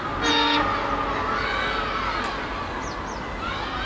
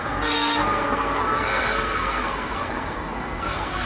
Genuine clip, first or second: first